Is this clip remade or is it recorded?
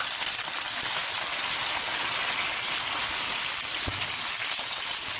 recorded